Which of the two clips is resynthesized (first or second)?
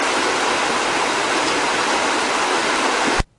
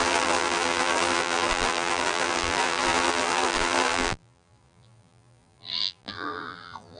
second